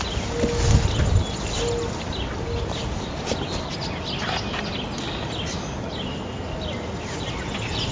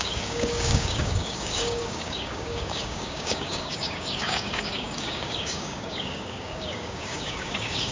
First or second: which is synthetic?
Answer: second